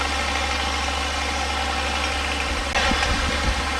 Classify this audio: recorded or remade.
recorded